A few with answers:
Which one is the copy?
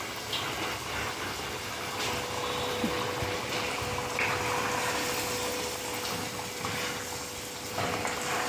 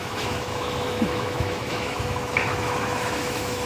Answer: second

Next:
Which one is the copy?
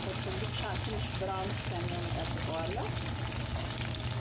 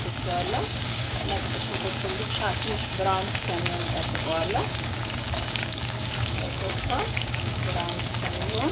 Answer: second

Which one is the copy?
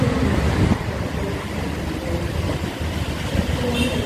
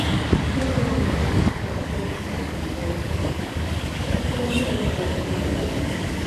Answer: second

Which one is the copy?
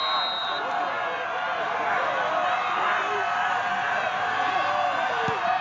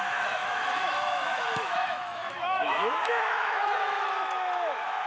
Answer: second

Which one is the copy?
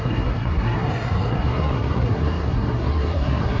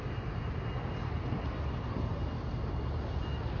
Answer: first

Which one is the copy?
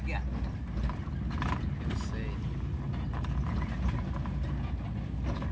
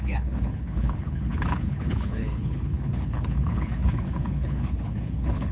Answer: second